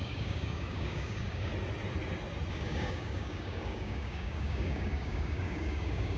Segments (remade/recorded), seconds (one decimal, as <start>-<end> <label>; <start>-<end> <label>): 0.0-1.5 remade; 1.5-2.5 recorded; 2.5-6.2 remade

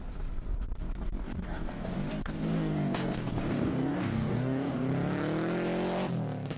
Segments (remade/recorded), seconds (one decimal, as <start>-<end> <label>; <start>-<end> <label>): 0.0-1.2 recorded; 1.2-4.9 remade; 4.9-6.6 recorded

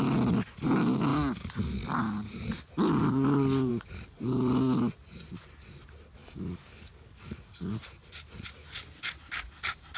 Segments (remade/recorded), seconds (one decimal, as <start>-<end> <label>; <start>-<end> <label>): 0.0-6.2 recorded; 6.2-7.7 remade; 7.7-10.0 recorded

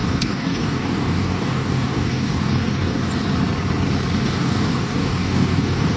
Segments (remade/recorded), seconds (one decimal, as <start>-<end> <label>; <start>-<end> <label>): 0.0-3.1 remade; 3.1-4.2 recorded; 4.2-6.0 remade